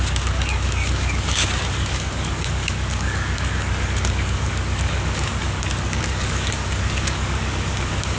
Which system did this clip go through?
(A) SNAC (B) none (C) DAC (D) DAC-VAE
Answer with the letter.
C